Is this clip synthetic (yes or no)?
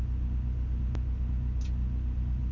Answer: no